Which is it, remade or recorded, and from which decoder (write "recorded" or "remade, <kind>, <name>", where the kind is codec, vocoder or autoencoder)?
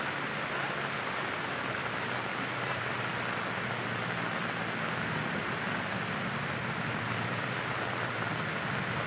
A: recorded